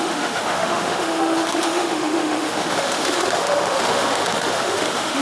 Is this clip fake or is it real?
fake